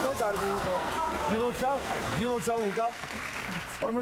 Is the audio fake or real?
fake